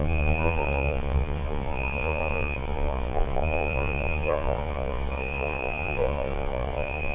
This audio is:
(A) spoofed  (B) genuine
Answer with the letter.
A